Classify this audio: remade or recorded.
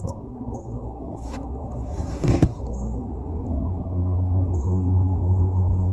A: remade